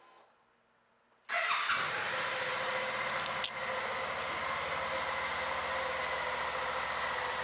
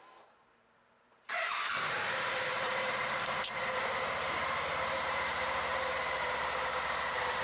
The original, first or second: first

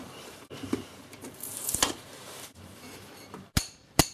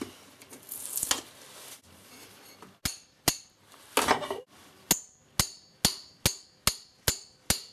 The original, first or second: second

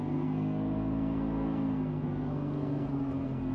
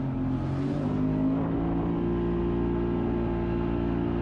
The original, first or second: second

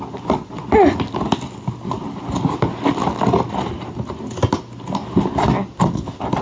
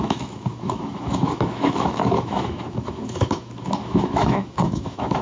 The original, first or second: first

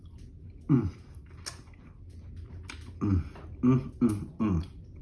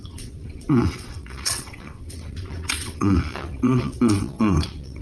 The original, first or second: first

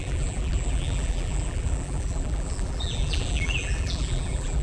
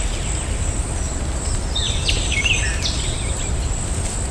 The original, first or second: second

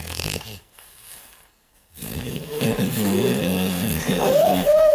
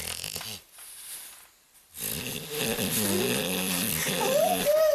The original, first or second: second